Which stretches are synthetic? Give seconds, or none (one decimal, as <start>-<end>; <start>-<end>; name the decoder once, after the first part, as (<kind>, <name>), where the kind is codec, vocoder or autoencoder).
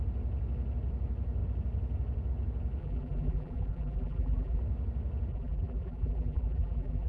2.8-4.6 (vocoder, BigVGAN v2); 5.3-7.1